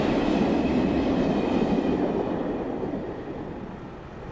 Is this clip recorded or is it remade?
recorded